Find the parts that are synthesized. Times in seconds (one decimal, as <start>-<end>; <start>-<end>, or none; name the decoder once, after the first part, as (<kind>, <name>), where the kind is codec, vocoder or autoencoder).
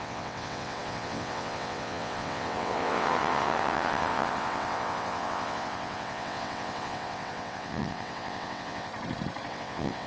0.0-8.9 (vocoder, WaveNeXt); 9.5-10.1